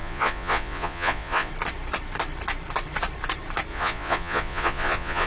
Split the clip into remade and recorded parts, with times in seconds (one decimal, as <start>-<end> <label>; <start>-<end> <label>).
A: 0.0-1.5 remade; 1.5-3.7 recorded; 3.7-5.3 remade